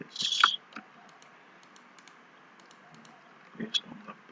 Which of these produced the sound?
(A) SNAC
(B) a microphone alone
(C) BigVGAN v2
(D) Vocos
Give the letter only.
B